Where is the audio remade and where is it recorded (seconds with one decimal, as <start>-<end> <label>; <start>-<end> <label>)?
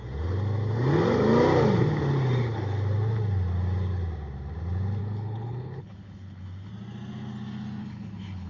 0.0-5.0 recorded; 5.0-6.7 remade; 6.7-7.8 recorded; 7.8-8.5 remade